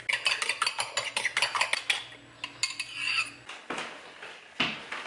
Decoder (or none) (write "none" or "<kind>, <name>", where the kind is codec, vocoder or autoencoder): none